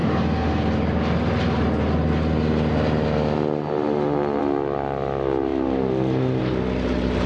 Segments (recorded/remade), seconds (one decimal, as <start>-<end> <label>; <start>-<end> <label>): 0.0-7.3 recorded